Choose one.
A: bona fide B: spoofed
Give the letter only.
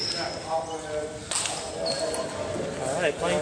A